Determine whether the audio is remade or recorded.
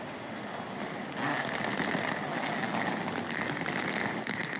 recorded